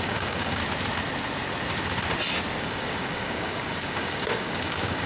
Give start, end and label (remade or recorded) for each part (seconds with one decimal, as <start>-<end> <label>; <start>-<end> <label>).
0.0-0.6 remade; 0.6-2.6 recorded; 2.6-5.1 remade